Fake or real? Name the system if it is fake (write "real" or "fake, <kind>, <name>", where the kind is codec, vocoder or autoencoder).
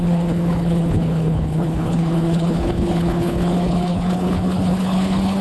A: fake, codec, HILCodec